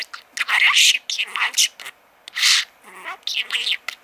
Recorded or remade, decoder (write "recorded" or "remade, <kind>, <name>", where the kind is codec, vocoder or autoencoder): recorded